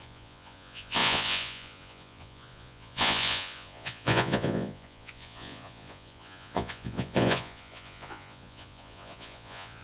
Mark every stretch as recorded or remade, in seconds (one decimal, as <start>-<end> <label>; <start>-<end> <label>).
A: 0.0-9.8 remade